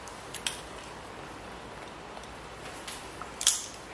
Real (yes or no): no